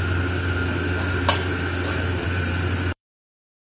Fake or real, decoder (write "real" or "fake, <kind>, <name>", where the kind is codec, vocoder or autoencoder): fake, vocoder, BigVGAN v2